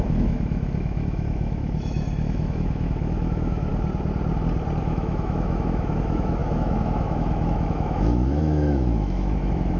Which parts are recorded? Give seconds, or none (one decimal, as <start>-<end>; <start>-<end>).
3.7-4.8